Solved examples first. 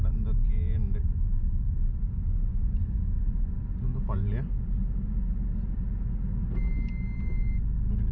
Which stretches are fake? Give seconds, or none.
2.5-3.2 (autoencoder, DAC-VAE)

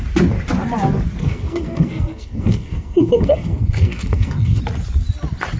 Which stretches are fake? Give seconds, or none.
1.2-4.6 (codec, SNAC)

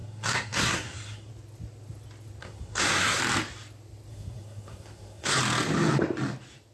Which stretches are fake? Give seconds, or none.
0.0-1.3 (codec, SNAC); 2.4-3.2; 4.1-5.4

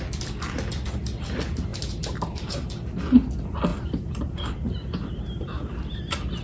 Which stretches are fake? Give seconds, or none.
1.7-2.7 (vocoder, BigVGAN v2); 3.7-6.0